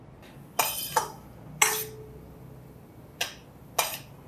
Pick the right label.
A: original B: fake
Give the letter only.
A